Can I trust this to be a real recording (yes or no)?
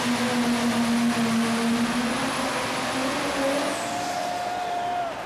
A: yes